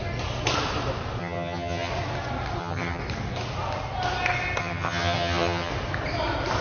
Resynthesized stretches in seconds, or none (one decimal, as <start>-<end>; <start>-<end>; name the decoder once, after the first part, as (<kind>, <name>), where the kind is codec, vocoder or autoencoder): 1.2-1.9 (vocoder, HiFi-GAN); 2.6-3.0; 4.6-5.7